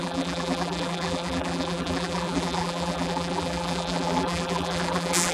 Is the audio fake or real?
fake